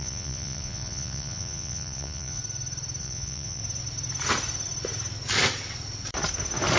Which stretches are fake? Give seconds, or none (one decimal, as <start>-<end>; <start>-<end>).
0.0-2.4; 3.0-3.6